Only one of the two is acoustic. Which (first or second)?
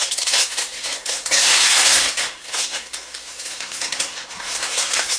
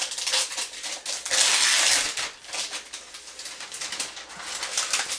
second